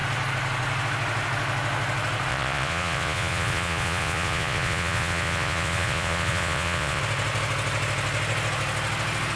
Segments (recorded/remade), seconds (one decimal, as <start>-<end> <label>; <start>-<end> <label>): 0.0-2.3 recorded; 2.3-7.0 remade; 7.0-9.4 recorded